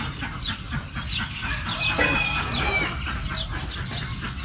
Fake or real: real